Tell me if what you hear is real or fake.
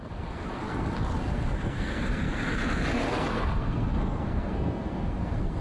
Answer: fake